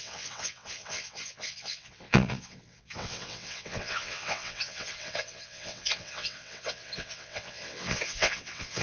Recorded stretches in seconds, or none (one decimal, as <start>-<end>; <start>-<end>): none